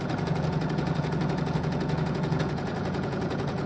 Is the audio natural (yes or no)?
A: no